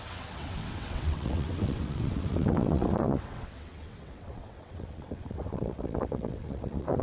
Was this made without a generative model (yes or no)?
no